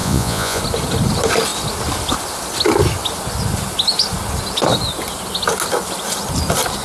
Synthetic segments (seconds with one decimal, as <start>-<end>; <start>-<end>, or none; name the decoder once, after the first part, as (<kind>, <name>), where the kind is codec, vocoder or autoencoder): 0.0-0.6 (vocoder, Vocos)